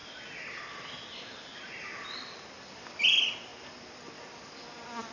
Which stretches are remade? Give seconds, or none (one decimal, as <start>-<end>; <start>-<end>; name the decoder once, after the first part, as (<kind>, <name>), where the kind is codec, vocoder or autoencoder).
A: none

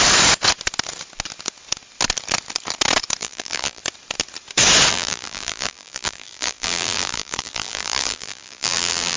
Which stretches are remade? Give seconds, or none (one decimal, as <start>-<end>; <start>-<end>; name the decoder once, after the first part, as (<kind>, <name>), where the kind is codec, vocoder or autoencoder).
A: 3.2-3.8 (vocoder, BigVGAN v2); 4.9-9.2